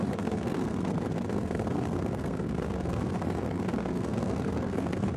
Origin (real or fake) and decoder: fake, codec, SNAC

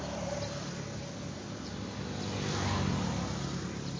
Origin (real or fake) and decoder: real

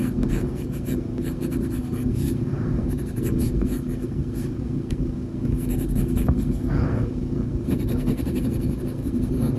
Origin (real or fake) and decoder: fake, codec, SNAC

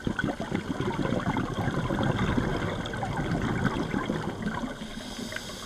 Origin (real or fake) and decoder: real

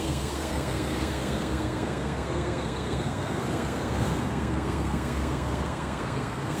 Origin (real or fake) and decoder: fake, codec, SNAC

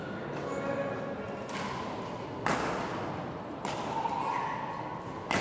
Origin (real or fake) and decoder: real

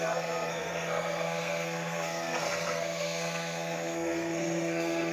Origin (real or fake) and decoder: fake, codec, SNAC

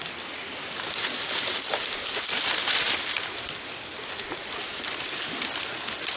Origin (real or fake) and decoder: real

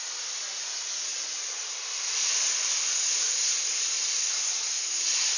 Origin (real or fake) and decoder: real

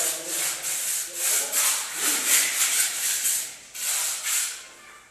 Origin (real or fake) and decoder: real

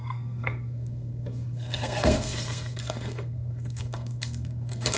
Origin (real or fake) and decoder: fake, codec, SNAC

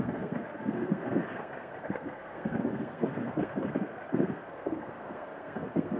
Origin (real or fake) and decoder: fake, codec, SNAC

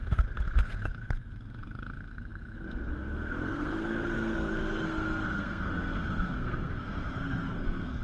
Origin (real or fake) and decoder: fake, codec, SNAC